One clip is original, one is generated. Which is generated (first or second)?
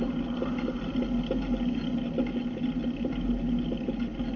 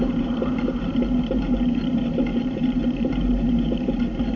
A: second